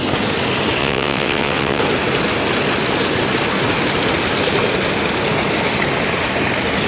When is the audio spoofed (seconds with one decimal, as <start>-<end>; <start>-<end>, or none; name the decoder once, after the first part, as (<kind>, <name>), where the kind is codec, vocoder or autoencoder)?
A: 0.8-1.8 (vocoder, WaveNeXt)